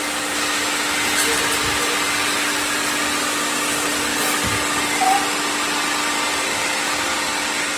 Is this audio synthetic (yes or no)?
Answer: no